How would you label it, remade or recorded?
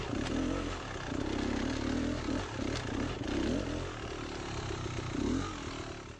recorded